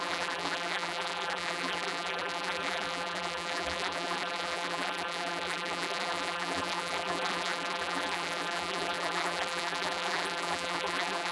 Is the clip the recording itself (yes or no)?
no